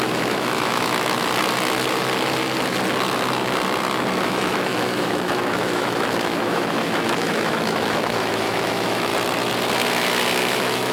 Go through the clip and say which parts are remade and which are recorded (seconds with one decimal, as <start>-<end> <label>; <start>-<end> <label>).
0.0-1.2 remade; 1.2-4.2 recorded; 4.2-9.1 remade; 9.1-10.4 recorded; 10.4-10.9 remade